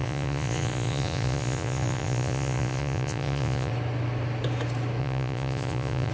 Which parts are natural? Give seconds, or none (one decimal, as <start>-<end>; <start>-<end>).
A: 3.7-5.0